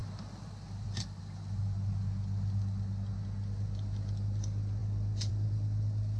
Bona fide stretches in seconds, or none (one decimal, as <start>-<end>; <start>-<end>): 0.0-6.2